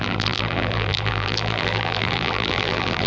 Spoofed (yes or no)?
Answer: yes